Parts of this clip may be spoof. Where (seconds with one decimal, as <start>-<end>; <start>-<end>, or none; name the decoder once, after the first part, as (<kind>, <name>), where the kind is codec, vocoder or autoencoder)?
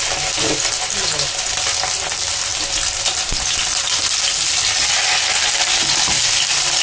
none